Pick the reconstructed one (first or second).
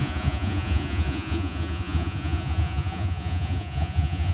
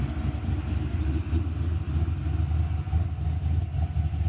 first